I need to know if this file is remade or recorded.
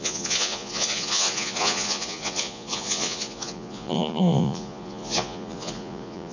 remade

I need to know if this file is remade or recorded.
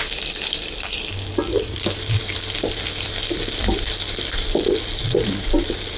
remade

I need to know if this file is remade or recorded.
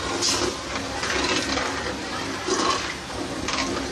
recorded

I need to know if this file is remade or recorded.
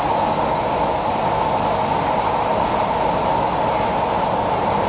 recorded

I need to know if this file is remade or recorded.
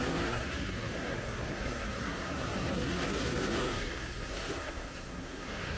remade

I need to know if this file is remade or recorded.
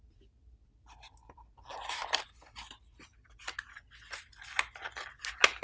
recorded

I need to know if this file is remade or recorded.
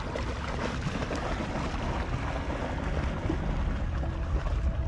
recorded